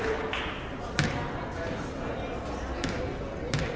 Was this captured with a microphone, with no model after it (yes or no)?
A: yes